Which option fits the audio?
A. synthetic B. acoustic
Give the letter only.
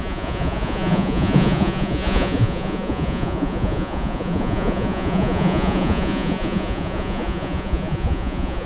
A